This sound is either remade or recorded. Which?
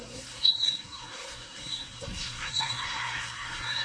remade